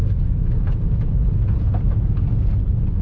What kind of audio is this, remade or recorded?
remade